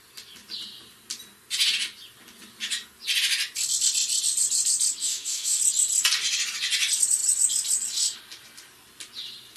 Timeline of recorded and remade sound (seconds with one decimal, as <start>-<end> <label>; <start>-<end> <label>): 0.0-5.0 recorded; 5.0-5.6 remade; 5.6-9.6 recorded